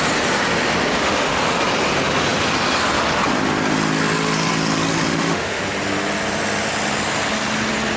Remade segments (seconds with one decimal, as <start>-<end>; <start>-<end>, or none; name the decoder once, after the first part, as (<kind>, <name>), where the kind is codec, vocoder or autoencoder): 0.9-1.4 (autoencoder, DAC-VAE); 5.1-5.6